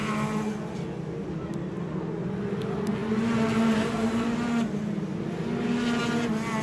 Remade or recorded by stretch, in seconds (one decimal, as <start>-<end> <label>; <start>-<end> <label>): 0.0-6.6 recorded